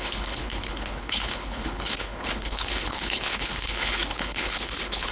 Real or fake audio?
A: fake